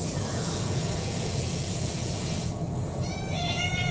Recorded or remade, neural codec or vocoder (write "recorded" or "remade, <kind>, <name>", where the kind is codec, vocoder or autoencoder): remade, vocoder, Vocos